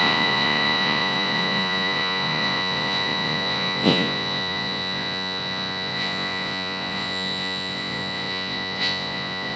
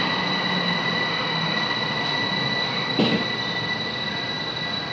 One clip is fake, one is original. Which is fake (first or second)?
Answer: first